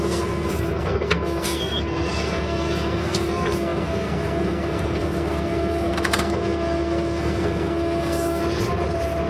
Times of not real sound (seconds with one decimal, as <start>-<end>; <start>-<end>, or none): 0.0-8.4